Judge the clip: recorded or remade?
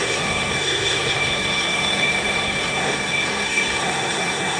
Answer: remade